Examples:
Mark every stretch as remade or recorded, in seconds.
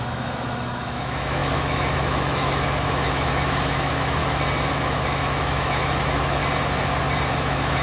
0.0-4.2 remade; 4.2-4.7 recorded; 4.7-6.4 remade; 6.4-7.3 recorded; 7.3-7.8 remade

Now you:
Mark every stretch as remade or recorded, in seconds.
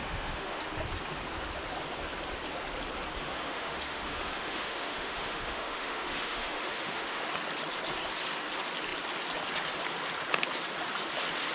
0.0-0.6 remade; 0.6-3.2 recorded; 3.2-7.3 remade; 7.3-11.5 recorded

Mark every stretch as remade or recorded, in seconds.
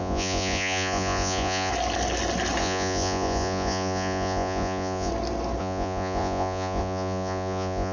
0.0-1.7 remade; 1.7-2.6 recorded; 2.6-5.1 remade; 5.1-5.6 recorded; 5.6-7.9 remade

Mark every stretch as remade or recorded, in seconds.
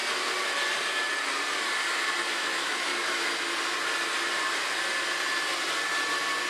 0.0-2.3 recorded; 2.3-2.9 remade; 2.9-6.5 recorded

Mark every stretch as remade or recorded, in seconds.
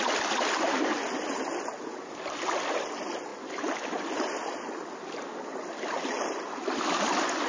0.0-7.5 recorded